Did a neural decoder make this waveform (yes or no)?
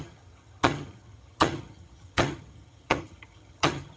yes